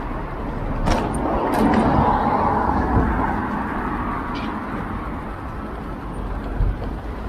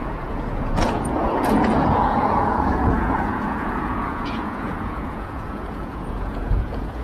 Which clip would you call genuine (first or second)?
first